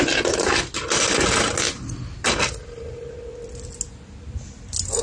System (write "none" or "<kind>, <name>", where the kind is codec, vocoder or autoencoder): none